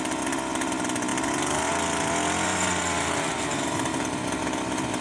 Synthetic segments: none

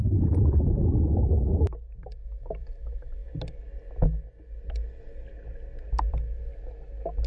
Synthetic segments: none

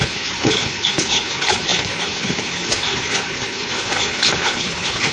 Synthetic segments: 0.0-5.1 (codec, HILCodec)

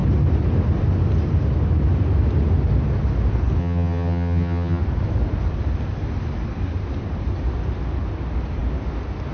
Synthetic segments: 3.6-4.8 (vocoder, HiFi-GAN)

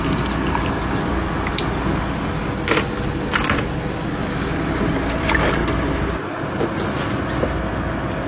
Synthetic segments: 5.6-6.4 (vocoder, BigVGAN v2)

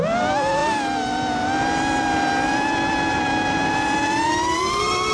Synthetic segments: none